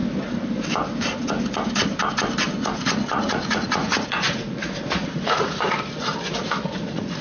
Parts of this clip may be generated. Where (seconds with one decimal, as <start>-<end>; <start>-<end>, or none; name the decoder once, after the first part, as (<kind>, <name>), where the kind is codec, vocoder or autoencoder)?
2.6-7.2 (vocoder, Vocos)

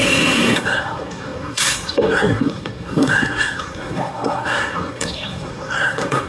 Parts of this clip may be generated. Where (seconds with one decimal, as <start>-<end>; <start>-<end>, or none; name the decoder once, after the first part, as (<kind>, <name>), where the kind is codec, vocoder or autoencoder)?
0.0-6.3 (codec, SNAC)